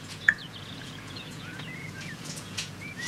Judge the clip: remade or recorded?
remade